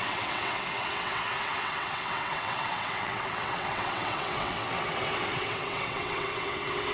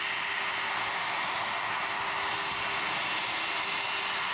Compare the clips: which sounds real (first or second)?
second